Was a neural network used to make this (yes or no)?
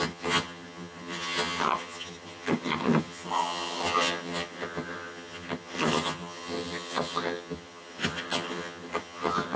yes